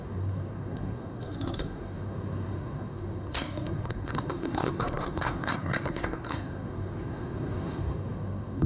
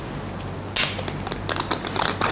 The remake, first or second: first